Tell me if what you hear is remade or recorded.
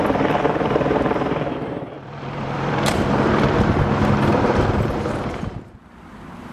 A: remade